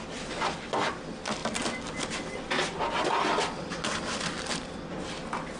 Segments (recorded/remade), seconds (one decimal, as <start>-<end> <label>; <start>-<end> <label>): 0.0-5.6 recorded